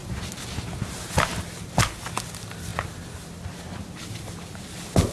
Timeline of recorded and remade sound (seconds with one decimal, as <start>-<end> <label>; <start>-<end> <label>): 0.0-5.1 recorded